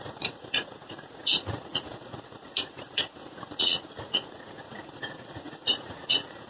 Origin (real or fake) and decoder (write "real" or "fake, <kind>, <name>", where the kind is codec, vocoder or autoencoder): fake, vocoder, Vocos